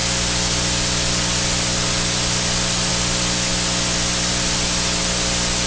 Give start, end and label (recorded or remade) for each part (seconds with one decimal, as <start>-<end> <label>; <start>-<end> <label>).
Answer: 0.0-5.7 recorded